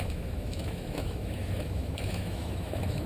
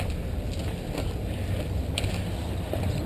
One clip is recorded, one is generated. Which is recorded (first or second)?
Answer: second